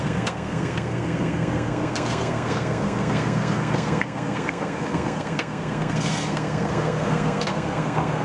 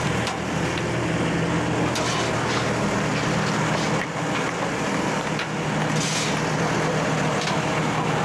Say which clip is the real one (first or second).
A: second